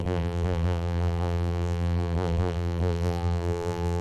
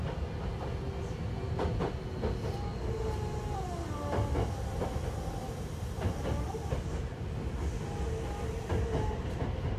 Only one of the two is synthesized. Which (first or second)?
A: first